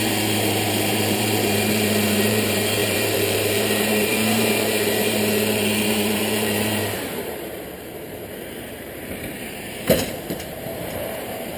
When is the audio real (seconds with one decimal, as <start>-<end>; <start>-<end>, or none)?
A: none